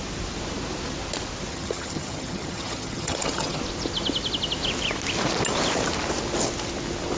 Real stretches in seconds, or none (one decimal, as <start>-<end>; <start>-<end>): 0.0-1.5; 3.6-7.2

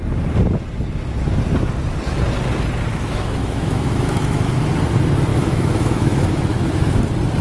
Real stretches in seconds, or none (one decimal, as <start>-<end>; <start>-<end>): 0.0-2.9; 4.7-5.3; 7.0-7.4

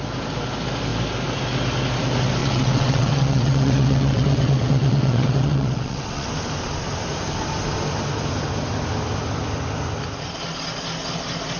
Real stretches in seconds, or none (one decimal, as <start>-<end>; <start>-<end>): 0.0-2.4; 6.3-11.6

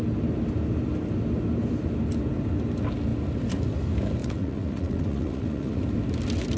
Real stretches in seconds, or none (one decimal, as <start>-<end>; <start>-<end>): 0.0-4.2; 5.8-6.6